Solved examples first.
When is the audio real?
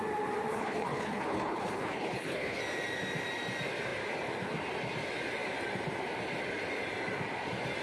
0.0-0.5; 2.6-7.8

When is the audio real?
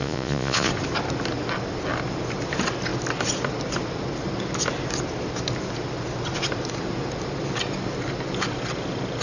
0.7-9.2